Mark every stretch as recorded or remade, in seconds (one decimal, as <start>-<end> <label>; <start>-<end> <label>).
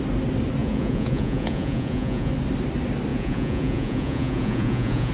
0.0-0.6 recorded; 0.6-2.3 remade; 2.3-3.1 recorded; 3.1-5.1 remade